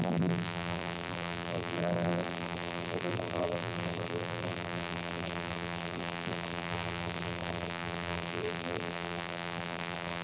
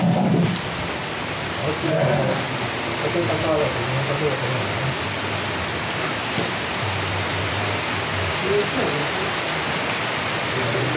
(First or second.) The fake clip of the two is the first